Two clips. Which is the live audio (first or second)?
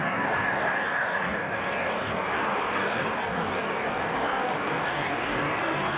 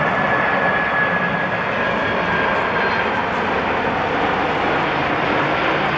second